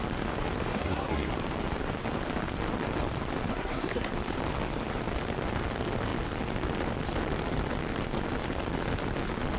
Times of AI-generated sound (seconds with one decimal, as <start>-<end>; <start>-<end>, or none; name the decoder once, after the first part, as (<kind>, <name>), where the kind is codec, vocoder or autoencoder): 0.7-1.3 (codec, SNAC); 3.5-4.1